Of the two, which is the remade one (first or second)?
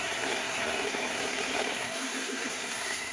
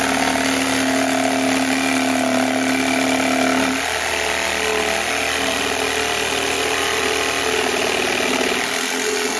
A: first